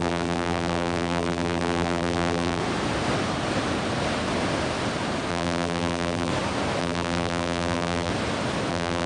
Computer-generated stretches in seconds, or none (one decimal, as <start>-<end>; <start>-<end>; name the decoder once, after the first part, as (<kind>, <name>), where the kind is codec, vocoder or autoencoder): 0.0-2.6 (vocoder, BigVGAN v2); 5.3-6.3; 6.8-8.1; 8.7-9.1